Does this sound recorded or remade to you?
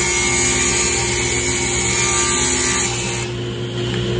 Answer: recorded